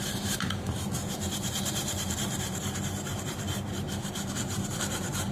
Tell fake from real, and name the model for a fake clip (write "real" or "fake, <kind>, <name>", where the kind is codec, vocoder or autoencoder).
fake, vocoder, BigVGAN v2